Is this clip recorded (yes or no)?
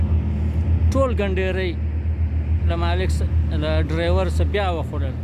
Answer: yes